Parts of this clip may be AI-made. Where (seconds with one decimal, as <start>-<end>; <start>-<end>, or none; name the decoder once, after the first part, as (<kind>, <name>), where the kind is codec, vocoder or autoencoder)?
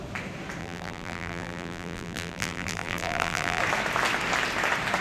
0.6-3.6 (vocoder, BigVGAN v2)